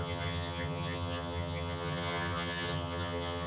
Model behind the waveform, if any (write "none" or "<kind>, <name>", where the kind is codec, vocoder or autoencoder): vocoder, HiFi-GAN